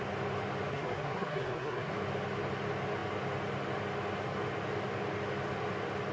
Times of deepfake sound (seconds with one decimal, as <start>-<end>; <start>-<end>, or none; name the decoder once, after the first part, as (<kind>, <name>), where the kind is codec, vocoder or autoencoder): 0.7-1.9 (codec, SNAC)